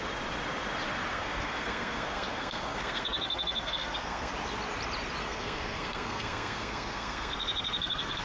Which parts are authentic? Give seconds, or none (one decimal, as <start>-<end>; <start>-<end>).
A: 0.0-1.1; 4.3-5.2